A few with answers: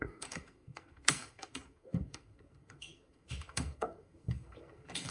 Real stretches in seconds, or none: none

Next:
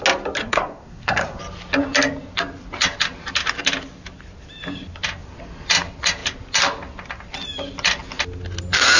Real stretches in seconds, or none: 0.0-0.4; 1.4-9.0

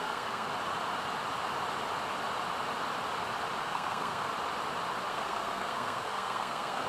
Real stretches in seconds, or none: 0.5-3.6; 4.3-5.1

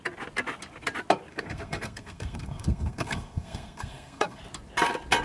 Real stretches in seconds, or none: 0.0-1.3; 4.4-5.2

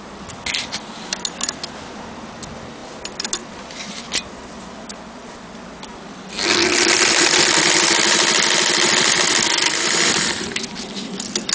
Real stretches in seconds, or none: 0.0-11.5